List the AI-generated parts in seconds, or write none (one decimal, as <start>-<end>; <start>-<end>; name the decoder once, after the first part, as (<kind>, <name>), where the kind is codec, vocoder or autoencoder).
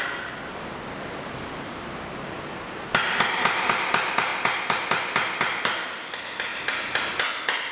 none